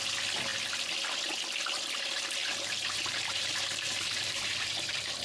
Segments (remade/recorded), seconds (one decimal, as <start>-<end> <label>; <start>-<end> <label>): 0.0-2.4 recorded; 2.4-5.2 remade